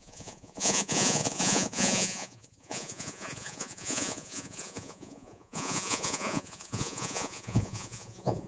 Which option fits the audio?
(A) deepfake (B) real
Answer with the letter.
A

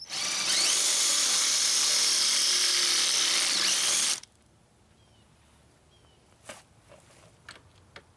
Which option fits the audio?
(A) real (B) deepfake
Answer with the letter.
A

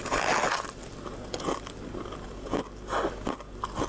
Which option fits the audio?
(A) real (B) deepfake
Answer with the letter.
A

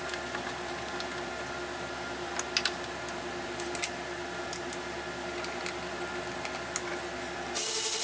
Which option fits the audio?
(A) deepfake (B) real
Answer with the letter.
B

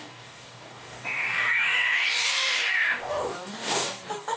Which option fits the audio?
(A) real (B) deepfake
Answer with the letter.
B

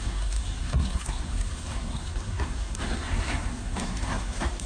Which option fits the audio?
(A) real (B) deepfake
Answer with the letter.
B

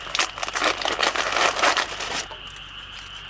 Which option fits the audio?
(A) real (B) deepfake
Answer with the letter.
A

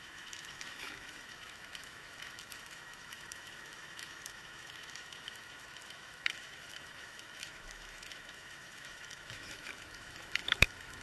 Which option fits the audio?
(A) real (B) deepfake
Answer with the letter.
B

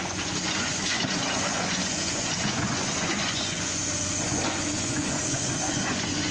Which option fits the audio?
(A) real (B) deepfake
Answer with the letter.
B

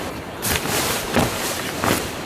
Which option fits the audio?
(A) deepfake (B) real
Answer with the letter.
A